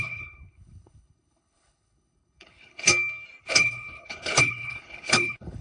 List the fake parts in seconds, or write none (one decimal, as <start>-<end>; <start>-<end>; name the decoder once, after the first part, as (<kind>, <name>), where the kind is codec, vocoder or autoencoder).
0.0-2.9 (codec, HILCodec); 3.4-5.6